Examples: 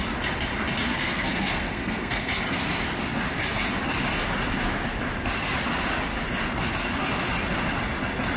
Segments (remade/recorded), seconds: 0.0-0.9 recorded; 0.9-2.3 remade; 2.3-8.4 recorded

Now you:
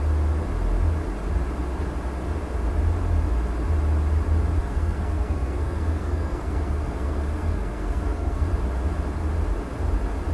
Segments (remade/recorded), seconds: 0.0-4.6 recorded; 4.6-8.5 remade; 8.5-10.3 recorded

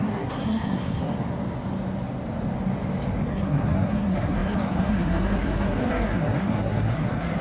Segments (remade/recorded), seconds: 0.0-1.1 remade; 1.1-3.3 recorded; 3.3-7.4 remade

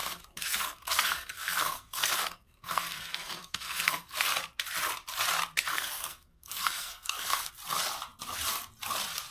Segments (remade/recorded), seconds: 0.0-4.3 remade; 4.3-5.7 recorded; 5.7-7.5 remade; 7.5-9.3 recorded